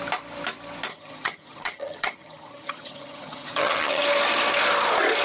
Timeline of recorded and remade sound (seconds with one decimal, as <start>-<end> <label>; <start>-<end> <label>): 0.0-0.9 recorded; 0.9-4.0 remade; 4.0-5.2 recorded